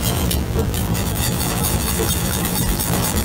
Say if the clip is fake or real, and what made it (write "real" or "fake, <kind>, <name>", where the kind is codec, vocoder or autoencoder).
fake, vocoder, BigVGAN v2